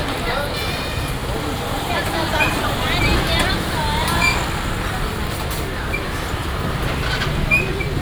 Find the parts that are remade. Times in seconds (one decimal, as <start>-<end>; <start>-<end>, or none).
none